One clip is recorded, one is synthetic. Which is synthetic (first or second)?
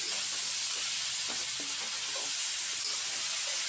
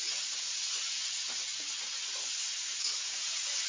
second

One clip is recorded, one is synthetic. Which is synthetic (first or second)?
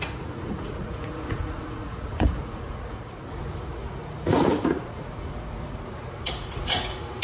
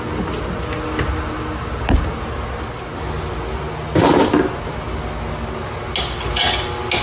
first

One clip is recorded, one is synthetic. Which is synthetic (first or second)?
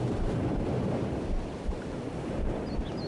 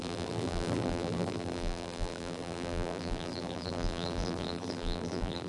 second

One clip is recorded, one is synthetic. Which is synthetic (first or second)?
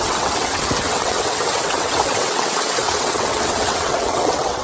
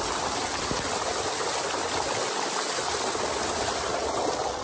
first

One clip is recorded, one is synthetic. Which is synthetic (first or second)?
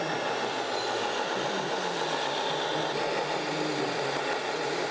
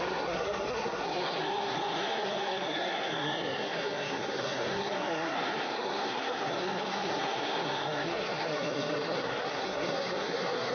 second